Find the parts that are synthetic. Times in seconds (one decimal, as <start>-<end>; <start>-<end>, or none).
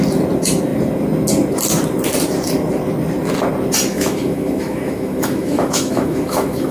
3.9-6.7